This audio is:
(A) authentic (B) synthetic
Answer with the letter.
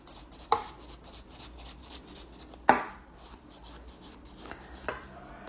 A